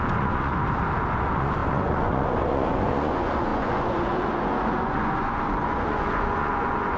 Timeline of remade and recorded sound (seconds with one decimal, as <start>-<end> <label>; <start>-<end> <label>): 0.0-0.5 remade; 0.5-1.1 recorded; 1.1-7.0 remade